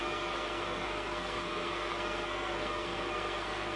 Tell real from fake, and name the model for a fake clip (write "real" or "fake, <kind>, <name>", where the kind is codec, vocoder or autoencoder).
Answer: fake, codec, SNAC